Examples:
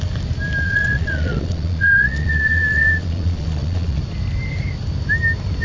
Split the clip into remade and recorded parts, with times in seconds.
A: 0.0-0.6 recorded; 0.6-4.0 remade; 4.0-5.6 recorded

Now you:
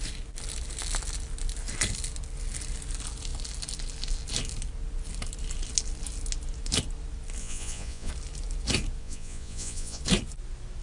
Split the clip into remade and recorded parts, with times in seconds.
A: 0.0-7.4 recorded; 7.4-8.1 remade; 8.1-9.0 recorded; 9.0-10.0 remade; 10.0-10.8 recorded

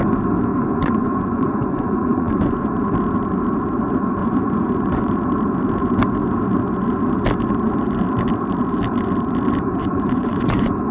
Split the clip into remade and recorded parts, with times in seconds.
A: 0.0-0.5 recorded; 0.5-2.7 remade; 2.7-4.2 recorded; 4.2-5.1 remade; 5.1-9.8 recorded; 9.8-10.9 remade

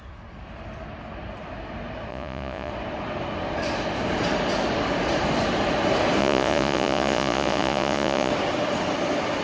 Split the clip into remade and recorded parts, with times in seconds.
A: 0.0-2.1 recorded; 2.1-2.7 remade; 2.7-6.2 recorded; 6.2-8.3 remade; 8.3-9.4 recorded

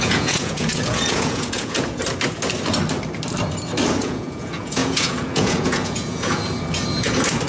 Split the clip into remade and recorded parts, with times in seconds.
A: 0.0-2.0 remade; 2.0-4.0 recorded; 4.0-6.4 remade; 6.4-7.5 recorded

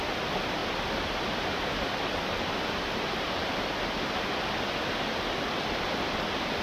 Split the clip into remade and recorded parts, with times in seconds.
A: 0.0-6.6 recorded